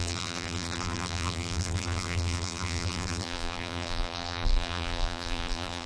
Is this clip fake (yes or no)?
yes